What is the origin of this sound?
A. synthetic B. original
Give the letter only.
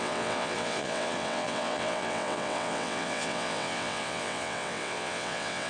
A